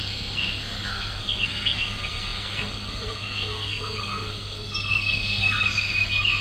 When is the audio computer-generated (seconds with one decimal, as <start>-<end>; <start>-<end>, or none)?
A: 0.0-6.4